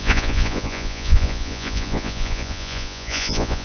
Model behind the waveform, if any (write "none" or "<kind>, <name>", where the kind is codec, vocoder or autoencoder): vocoder, Vocos